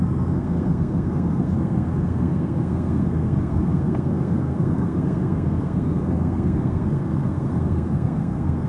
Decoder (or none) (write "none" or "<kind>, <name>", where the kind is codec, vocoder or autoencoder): codec, SNAC